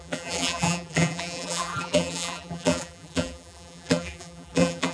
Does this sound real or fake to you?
fake